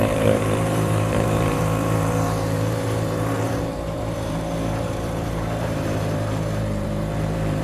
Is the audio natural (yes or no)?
no